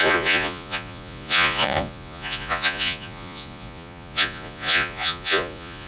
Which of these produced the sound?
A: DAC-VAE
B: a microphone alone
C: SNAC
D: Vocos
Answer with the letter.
D